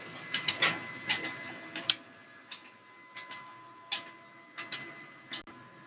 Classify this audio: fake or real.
real